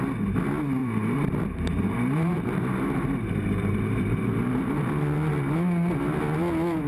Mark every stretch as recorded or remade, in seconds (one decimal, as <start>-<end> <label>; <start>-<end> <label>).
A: 0.0-0.8 recorded; 0.8-4.9 remade; 4.9-6.9 recorded